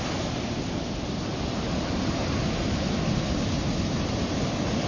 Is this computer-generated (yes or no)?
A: no